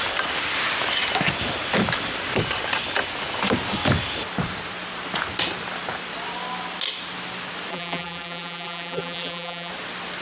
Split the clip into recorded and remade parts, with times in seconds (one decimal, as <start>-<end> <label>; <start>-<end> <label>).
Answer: 0.0-7.7 recorded; 7.7-9.7 remade; 9.7-10.2 recorded